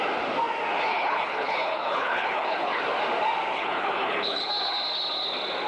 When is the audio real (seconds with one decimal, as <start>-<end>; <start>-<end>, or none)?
0.0-0.9; 2.8-3.5; 4.5-5.7